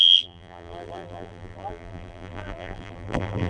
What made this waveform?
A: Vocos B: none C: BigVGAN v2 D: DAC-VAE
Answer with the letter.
C